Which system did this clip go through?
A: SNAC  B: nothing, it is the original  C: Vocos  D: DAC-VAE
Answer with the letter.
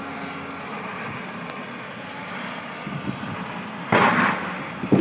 B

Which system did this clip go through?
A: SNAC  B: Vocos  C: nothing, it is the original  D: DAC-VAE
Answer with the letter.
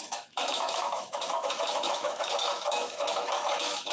D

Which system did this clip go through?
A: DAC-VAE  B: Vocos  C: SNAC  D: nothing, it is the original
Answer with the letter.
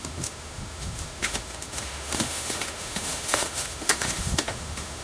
A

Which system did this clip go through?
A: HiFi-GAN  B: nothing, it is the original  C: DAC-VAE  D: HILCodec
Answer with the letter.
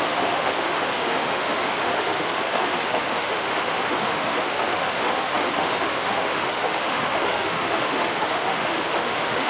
C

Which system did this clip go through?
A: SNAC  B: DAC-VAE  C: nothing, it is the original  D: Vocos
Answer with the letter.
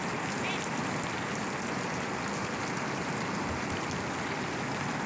C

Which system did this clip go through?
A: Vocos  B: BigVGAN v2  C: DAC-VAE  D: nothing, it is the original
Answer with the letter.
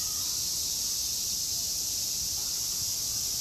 D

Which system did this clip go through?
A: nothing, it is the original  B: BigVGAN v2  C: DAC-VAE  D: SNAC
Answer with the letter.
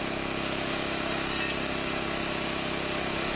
A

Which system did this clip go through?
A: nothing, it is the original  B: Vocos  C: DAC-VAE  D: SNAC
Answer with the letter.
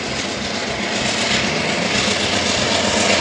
A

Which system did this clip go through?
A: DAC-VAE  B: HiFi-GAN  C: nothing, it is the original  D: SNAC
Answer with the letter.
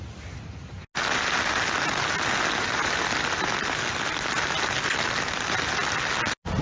C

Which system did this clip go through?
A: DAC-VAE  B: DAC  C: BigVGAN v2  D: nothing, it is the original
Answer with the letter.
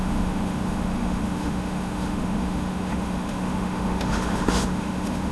A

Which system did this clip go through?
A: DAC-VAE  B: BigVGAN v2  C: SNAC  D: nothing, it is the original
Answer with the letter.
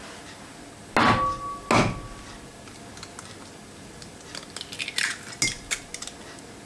D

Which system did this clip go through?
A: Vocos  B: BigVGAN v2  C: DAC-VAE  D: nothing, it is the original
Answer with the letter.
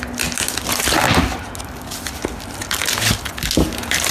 D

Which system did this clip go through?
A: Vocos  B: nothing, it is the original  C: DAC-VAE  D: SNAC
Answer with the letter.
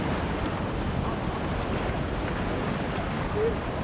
B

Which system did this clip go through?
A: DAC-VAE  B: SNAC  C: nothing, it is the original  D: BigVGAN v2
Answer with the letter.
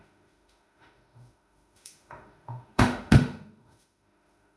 A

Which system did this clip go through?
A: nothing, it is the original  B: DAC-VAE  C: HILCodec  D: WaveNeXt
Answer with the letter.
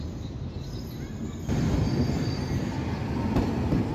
A